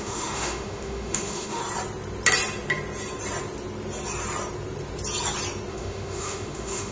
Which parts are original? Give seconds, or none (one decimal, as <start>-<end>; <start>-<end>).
1.6-5.7